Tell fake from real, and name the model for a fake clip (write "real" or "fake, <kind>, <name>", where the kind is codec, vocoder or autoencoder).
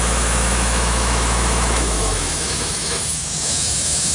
fake, autoencoder, DAC-VAE